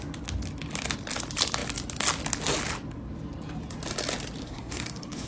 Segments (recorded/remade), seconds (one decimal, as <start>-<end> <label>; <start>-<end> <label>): 0.0-4.4 recorded; 4.4-5.3 remade